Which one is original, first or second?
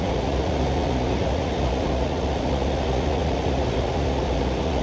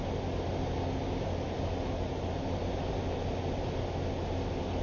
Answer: second